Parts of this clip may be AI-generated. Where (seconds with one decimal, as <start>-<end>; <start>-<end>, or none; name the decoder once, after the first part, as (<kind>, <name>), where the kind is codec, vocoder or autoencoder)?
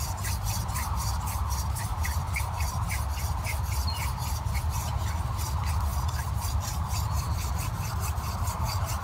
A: none